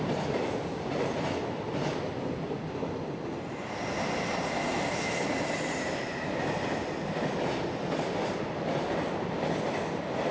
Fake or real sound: real